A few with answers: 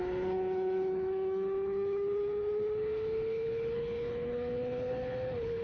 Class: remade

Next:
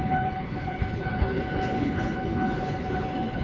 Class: remade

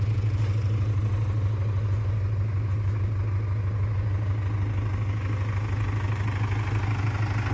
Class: recorded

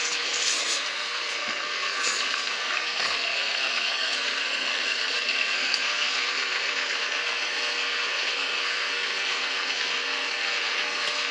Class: remade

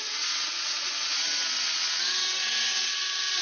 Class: remade